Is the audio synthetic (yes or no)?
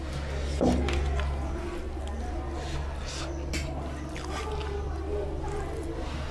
no